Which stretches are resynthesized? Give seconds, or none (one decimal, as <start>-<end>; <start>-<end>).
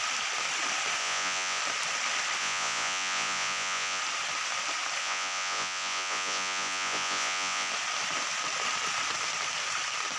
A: 1.0-1.6; 2.4-4.0; 5.0-7.7